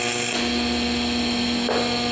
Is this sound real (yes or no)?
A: yes